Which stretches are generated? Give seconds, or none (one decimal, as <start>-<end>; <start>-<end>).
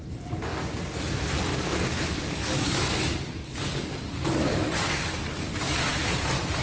1.5-5.5